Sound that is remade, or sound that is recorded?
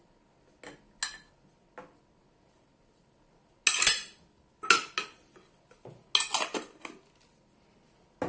recorded